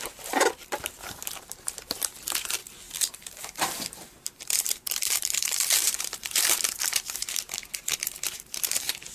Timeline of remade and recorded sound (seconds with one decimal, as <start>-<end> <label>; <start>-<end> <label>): 0.0-2.6 remade; 2.6-3.1 recorded; 3.1-9.1 remade